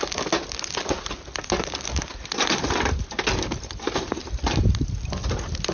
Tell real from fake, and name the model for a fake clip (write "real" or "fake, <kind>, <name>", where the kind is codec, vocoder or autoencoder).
real